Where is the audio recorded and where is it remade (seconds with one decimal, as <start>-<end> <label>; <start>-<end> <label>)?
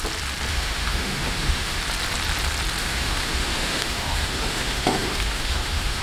0.0-0.5 recorded; 0.5-1.8 remade; 1.8-2.8 recorded; 2.8-6.0 remade